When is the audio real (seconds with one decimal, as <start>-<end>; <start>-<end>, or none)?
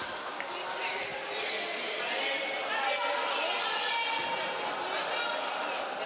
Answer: 0.0-6.1